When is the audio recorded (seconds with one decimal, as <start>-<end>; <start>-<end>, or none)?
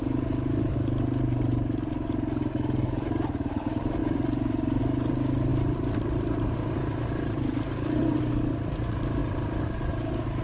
0.0-4.0; 4.8-5.5; 8.2-9.2; 9.9-10.4